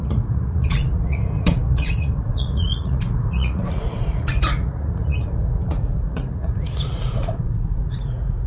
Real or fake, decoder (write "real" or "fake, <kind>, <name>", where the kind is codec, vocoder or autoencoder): fake, vocoder, Vocos